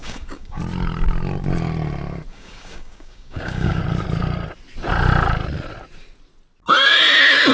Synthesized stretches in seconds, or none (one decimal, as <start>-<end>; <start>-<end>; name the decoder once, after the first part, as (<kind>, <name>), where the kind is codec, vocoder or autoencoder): 0.0-0.6 (codec, DAC); 2.3-3.8